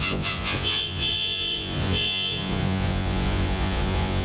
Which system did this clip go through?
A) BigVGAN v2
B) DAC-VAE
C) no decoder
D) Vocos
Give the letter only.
D